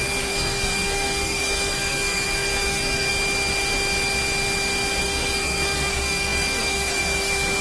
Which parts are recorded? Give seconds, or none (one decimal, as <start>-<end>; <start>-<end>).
3.1-5.0